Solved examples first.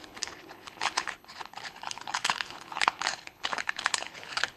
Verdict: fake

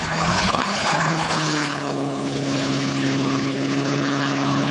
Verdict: fake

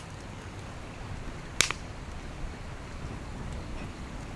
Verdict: real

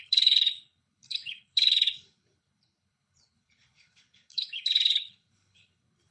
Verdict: fake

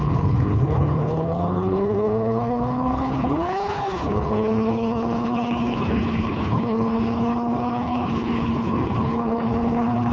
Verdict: fake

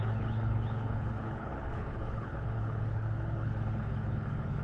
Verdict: fake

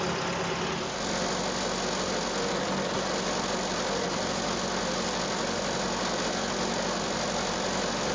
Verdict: real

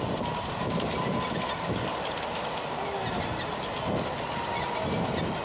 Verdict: real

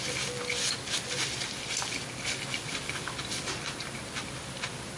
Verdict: real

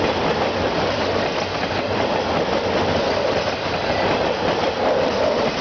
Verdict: real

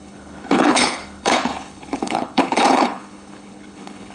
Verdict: fake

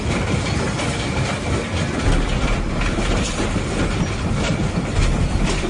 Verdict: real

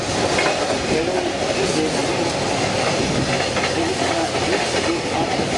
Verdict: real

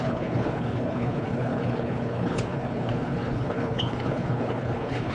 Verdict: fake